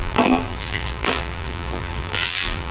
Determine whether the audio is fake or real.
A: fake